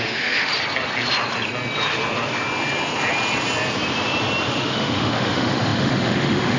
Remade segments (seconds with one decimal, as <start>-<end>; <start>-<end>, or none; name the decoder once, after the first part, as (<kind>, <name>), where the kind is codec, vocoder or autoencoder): 0.0-0.5 (autoencoder, DAC-VAE); 4.5-6.6